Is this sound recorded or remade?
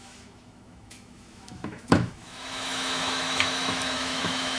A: remade